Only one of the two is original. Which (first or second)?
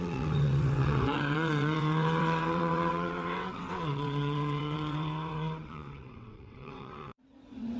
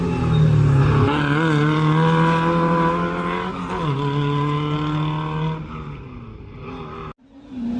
second